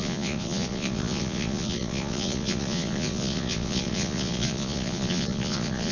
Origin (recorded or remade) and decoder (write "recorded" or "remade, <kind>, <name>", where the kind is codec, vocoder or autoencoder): remade, vocoder, Vocos